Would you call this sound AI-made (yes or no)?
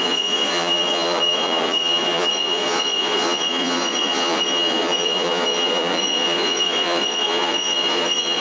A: yes